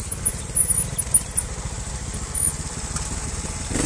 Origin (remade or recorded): recorded